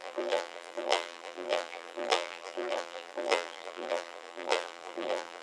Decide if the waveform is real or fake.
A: fake